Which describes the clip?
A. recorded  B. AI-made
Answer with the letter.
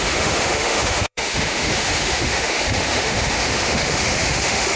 B